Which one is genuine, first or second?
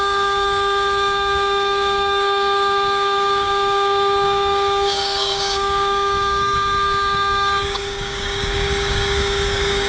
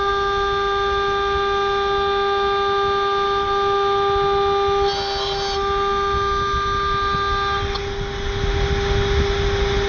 second